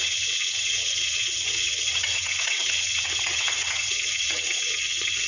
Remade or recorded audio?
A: remade